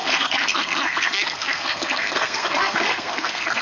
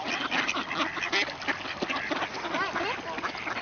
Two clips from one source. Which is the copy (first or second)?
first